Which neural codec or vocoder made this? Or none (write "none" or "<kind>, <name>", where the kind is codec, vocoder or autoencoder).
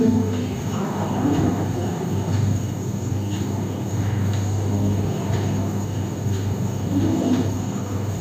codec, DAC